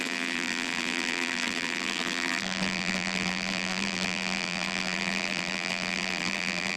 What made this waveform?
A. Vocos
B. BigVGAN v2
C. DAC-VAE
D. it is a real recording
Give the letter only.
B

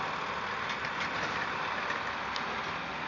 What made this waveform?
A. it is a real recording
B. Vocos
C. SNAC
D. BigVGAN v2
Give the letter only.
A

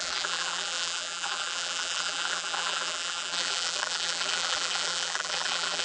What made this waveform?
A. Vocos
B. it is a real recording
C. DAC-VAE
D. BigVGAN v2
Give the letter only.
D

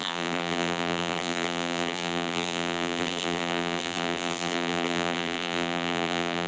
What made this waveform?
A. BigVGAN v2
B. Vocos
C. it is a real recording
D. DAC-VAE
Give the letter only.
A